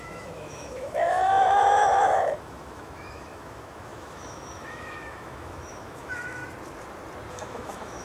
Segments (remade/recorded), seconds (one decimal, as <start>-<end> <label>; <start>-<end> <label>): 0.0-6.4 remade; 6.4-7.3 recorded; 7.3-8.0 remade